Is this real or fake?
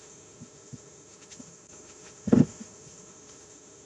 fake